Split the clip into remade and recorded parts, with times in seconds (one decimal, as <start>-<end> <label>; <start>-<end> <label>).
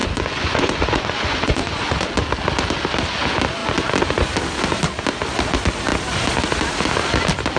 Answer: 0.0-2.1 remade; 2.1-7.6 recorded